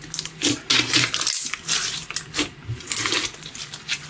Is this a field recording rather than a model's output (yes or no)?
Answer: yes